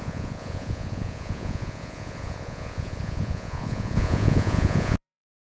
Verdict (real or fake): fake